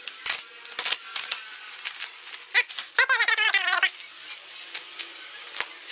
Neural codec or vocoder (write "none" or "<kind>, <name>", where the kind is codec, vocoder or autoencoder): none